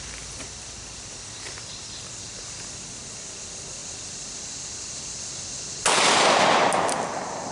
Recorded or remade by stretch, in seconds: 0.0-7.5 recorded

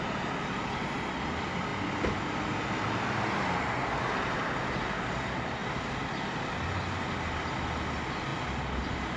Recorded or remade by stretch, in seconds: 0.0-9.2 recorded

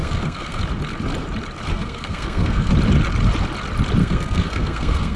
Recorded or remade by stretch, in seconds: 0.0-0.6 remade; 0.6-1.7 recorded; 1.7-2.7 remade; 2.7-4.0 recorded; 4.0-5.2 remade

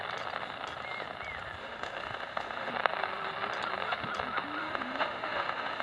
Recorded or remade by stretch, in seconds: 0.0-1.6 recorded; 1.6-2.7 remade; 2.7-4.6 recorded; 4.6-5.8 remade

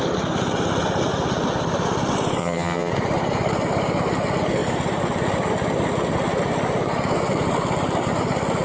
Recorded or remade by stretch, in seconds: 0.0-2.4 recorded; 2.4-2.9 remade; 2.9-8.6 recorded

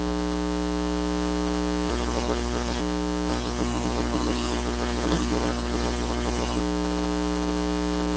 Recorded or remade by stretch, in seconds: 0.0-1.9 recorded; 1.9-2.8 remade; 2.8-3.3 recorded; 3.3-6.6 remade; 6.6-8.2 recorded